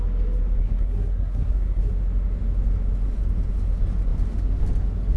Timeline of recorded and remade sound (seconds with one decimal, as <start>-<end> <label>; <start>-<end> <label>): 0.0-0.6 recorded; 0.6-1.9 remade; 1.9-5.2 recorded